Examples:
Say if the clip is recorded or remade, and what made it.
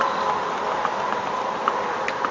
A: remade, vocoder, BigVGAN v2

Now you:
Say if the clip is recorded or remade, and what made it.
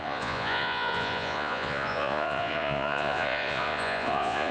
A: remade, vocoder, Vocos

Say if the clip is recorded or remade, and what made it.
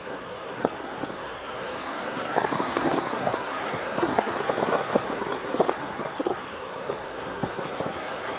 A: remade, codec, SNAC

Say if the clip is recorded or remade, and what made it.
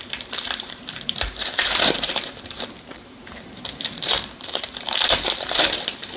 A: remade, vocoder, BigVGAN v2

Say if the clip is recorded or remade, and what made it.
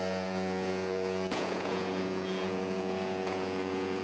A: remade, vocoder, Vocos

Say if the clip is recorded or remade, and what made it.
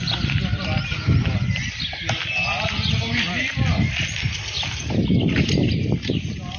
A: recorded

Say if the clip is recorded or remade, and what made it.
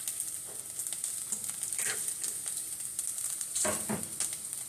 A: recorded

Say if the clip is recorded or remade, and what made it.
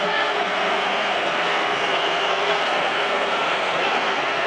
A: remade, codec, SNAC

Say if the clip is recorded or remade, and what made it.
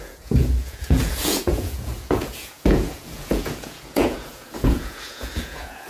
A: remade, vocoder, Vocos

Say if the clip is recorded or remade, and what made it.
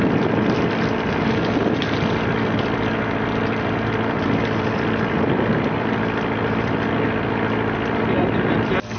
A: recorded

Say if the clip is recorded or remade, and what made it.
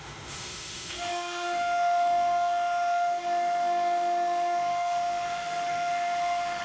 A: remade, autoencoder, DAC-VAE